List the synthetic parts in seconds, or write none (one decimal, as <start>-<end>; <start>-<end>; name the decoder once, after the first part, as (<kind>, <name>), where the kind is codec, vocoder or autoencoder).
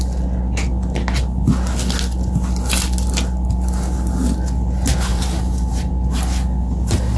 5.1-5.9 (vocoder, BigVGAN v2)